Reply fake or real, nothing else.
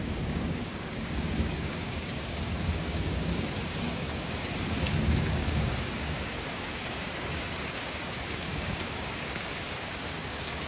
fake